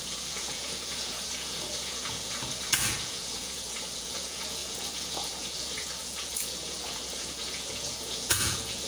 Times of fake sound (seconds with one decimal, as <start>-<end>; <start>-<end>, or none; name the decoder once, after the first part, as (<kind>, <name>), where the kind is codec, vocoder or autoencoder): 0.0-8.9 (vocoder, Vocos)